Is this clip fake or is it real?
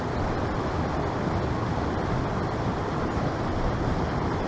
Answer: real